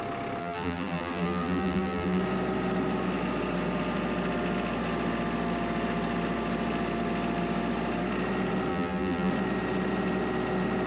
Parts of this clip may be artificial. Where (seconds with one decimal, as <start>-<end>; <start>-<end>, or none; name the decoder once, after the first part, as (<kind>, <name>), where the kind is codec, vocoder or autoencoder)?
0.4-2.2 (vocoder, BigVGAN v2); 8.7-9.3